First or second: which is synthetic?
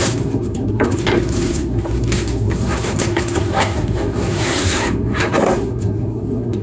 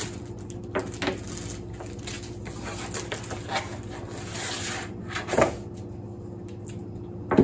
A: first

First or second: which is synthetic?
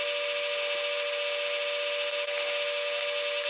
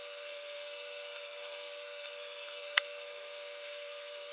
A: second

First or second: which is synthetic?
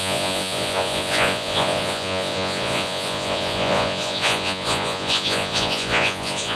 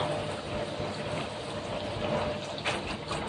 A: first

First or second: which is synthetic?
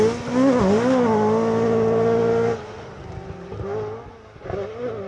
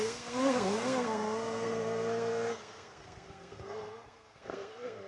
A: second